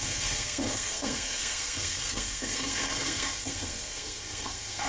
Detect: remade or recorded remade